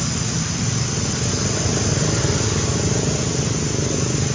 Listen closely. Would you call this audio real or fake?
real